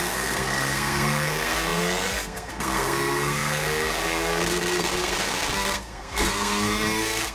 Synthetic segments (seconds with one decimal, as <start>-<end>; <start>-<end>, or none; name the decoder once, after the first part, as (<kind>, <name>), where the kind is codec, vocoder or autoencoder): 0.0-7.3 (codec, SNAC)

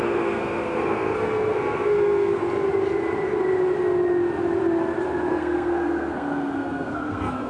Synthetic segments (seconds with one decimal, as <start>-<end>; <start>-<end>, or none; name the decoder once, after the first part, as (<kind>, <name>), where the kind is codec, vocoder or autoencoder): 0.0-2.4 (codec, SNAC); 5.3-7.5

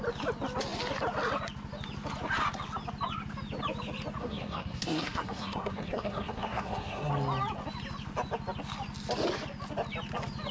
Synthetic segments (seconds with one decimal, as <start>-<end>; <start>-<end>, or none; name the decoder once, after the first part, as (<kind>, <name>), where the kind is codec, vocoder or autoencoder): 4.2-7.1 (codec, SNAC)

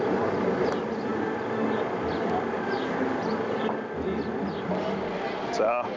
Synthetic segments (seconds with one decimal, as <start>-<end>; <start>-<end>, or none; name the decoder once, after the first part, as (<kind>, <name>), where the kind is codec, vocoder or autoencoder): none

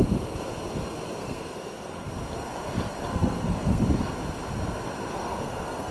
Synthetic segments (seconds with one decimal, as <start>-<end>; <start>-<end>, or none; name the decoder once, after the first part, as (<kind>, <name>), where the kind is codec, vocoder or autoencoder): 1.2-2.1 (codec, SNAC); 3.1-3.8; 5.1-5.9